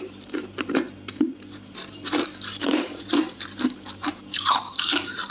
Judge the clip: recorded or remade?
remade